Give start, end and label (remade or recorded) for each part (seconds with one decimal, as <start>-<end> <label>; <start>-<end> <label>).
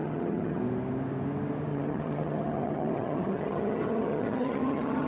0.0-0.6 remade; 0.6-1.7 recorded; 1.7-5.1 remade